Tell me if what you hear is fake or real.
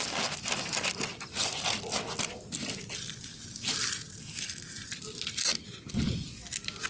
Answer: real